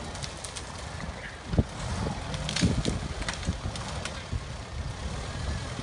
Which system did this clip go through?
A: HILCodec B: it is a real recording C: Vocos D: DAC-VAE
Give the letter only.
B